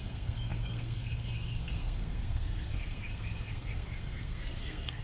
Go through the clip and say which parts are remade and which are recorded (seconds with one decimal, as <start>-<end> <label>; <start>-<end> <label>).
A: 0.0-5.0 remade